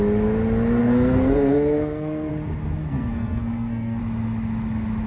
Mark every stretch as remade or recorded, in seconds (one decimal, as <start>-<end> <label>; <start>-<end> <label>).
0.0-0.8 recorded; 0.8-2.3 remade; 2.3-2.8 recorded; 2.8-4.0 remade; 4.0-5.1 recorded